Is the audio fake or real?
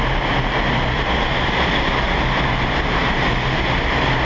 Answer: real